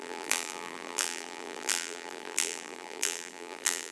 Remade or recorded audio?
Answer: remade